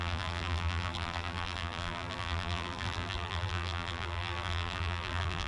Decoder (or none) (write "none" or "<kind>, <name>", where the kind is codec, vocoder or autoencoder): vocoder, BigVGAN v2